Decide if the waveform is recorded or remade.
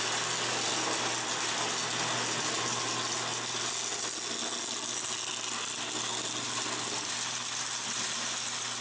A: recorded